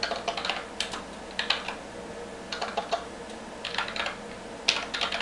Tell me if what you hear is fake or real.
real